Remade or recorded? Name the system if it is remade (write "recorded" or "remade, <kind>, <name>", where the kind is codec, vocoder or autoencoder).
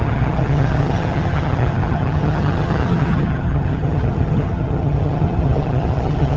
remade, vocoder, HiFi-GAN